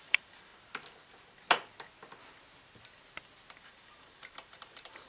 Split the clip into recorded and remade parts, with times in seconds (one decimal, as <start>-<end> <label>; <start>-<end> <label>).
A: 0.0-0.5 remade; 0.5-3.6 recorded; 3.6-5.1 remade